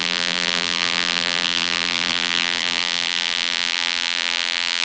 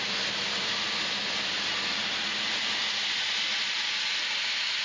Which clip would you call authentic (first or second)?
second